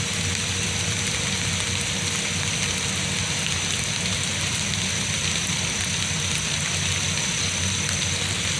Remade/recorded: recorded